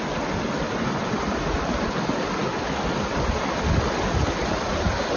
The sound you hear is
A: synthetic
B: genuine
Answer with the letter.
B